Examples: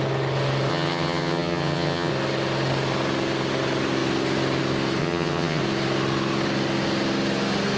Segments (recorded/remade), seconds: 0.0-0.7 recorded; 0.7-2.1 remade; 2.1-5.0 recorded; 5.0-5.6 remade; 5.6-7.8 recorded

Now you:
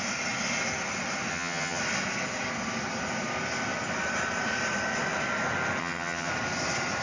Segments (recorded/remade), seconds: 0.0-1.3 recorded; 1.3-1.8 remade; 1.8-5.8 recorded; 5.8-6.3 remade; 6.3-7.0 recorded

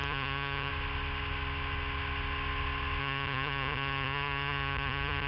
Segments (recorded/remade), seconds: 0.0-0.7 remade; 0.7-3.0 recorded; 3.0-5.3 remade

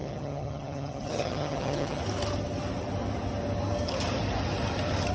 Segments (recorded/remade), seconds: 0.0-2.0 remade; 2.0-5.1 recorded

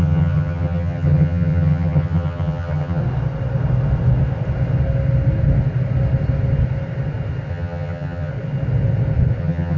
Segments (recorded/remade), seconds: 0.0-3.0 remade; 3.0-7.5 recorded; 7.5-8.3 remade; 8.3-9.4 recorded; 9.4-9.8 remade

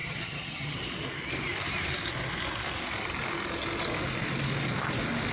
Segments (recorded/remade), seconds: 0.0-0.8 remade; 0.8-5.3 recorded

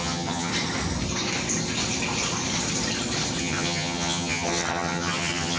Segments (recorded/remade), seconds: 0.0-0.5 remade; 0.5-3.4 recorded; 3.4-5.6 remade